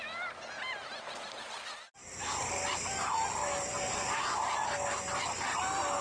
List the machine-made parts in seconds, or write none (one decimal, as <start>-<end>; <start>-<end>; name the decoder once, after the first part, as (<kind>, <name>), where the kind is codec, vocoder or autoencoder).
none